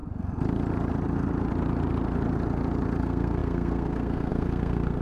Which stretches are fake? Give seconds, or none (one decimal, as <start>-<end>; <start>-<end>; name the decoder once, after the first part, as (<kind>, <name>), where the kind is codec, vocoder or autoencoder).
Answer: 3.0-5.0 (codec, SNAC)

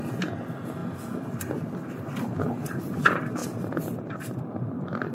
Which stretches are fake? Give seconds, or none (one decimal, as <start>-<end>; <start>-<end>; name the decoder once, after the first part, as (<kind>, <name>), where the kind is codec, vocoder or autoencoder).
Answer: none